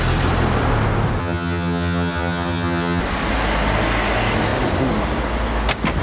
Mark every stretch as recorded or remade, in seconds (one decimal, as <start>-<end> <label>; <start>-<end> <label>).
0.0-1.2 recorded; 1.2-3.0 remade; 3.0-6.0 recorded